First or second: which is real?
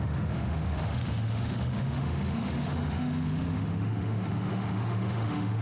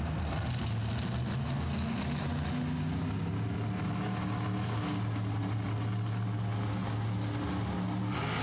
second